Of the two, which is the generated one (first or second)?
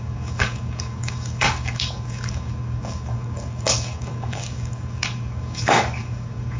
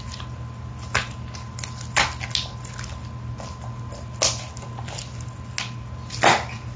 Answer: first